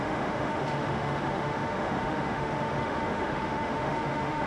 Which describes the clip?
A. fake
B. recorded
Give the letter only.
A